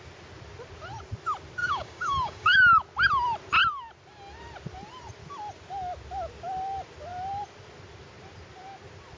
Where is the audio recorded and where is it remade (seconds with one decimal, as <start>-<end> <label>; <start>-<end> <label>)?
0.0-1.6 recorded; 1.6-2.6 remade; 2.6-9.2 recorded